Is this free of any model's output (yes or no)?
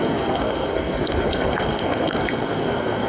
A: no